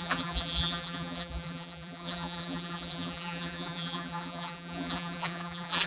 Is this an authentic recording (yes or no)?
no